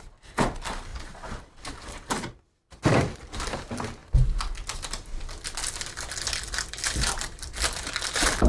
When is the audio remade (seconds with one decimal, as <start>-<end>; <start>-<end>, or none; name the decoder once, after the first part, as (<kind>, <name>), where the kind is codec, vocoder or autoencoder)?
0.0-0.9 (vocoder, BigVGAN v2); 2.4-4.0; 6.3-8.5